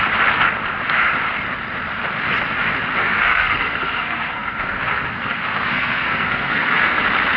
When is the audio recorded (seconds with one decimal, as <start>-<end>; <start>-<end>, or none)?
0.0-3.0; 7.0-7.4